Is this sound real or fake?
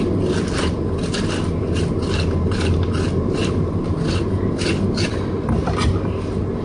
real